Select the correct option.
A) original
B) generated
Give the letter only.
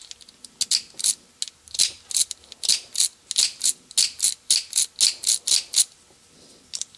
A